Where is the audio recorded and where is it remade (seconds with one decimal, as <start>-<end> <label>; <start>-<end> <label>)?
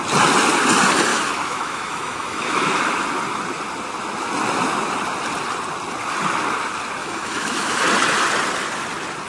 0.0-1.1 recorded; 1.1-2.8 remade; 2.8-7.0 recorded; 7.0-7.8 remade; 7.8-9.3 recorded